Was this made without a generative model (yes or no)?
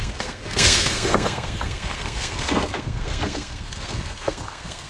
no